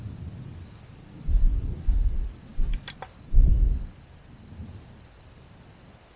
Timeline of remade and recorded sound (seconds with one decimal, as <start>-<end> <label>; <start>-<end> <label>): 0.0-6.2 recorded